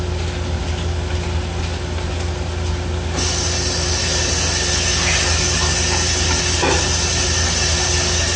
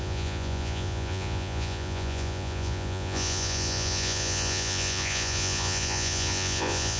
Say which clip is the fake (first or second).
second